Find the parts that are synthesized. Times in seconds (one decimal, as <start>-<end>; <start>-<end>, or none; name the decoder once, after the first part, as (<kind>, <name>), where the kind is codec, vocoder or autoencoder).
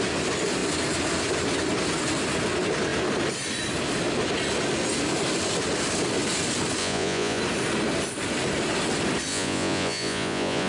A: 6.8-7.4 (vocoder, Vocos); 9.3-10.7